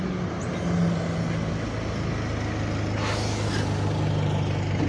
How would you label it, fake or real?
real